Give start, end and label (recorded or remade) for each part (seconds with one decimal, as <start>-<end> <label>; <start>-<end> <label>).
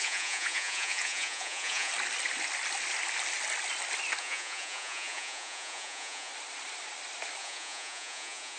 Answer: 0.0-1.9 remade; 1.9-4.2 recorded; 4.2-6.3 remade; 6.3-7.4 recorded; 7.4-8.6 remade